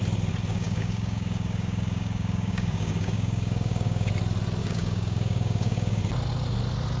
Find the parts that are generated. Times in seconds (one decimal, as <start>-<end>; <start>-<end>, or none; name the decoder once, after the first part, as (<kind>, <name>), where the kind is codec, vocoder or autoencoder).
0.5-4.1 (codec, DAC); 4.6-6.0